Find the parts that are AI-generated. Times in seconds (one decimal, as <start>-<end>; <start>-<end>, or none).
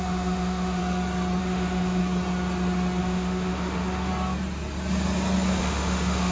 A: 0.0-0.8; 1.4-2.0; 3.0-4.1; 5.6-6.3